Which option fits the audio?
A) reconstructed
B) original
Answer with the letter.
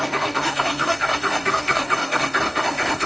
A